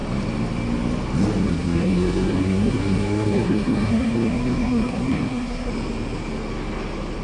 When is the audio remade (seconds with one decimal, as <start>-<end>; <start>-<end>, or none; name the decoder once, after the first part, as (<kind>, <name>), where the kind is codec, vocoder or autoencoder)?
1.4-5.7 (codec, SNAC)